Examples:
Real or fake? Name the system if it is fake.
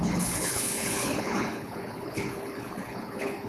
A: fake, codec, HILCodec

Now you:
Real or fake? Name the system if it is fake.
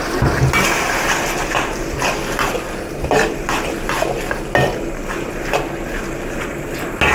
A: real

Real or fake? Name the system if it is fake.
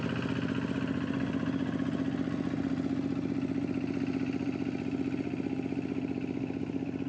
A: real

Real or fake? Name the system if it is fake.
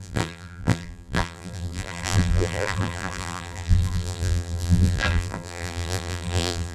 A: fake, vocoder, BigVGAN v2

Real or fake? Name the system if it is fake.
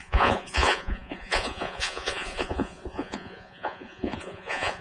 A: fake, vocoder, Vocos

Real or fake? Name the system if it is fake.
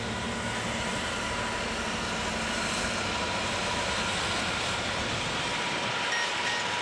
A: real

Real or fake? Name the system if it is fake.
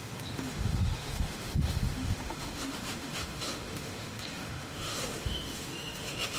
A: fake, autoencoder, DAC-VAE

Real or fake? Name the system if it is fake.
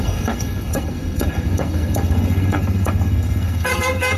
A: fake, codec, SNAC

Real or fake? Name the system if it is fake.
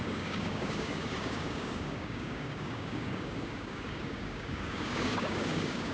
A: fake, codec, DAC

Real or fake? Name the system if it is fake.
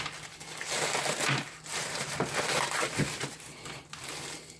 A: real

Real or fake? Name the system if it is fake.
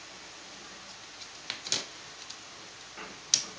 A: real